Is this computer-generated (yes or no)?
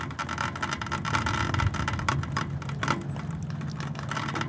no